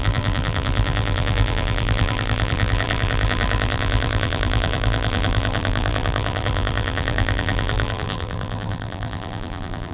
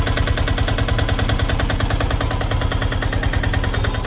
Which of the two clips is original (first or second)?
second